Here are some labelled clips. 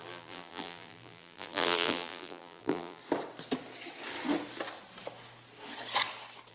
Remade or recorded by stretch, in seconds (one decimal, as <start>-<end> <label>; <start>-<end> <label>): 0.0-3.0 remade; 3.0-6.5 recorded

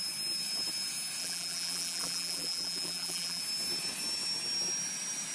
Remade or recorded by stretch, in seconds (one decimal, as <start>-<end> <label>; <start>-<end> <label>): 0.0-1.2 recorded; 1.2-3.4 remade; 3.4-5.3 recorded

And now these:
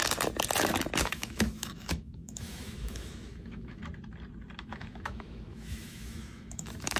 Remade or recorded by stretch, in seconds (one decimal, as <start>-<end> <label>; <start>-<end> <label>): 0.0-1.0 recorded; 1.0-3.8 remade; 3.8-4.6 recorded; 4.6-7.0 remade